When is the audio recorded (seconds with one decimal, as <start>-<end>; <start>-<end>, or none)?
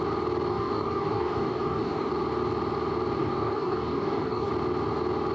0.0-0.5; 2.1-3.2; 4.5-5.3